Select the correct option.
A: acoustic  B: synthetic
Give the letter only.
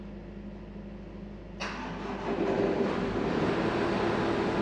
A